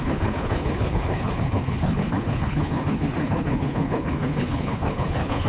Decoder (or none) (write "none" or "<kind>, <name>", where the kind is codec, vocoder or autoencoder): codec, HILCodec